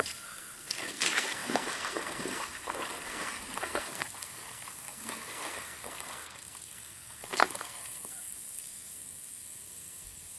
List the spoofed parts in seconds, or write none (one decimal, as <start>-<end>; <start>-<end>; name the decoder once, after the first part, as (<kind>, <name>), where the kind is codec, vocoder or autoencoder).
0.0-10.4 (codec, SNAC)